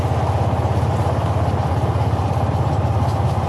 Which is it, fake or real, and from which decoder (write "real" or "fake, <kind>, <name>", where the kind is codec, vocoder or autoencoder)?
real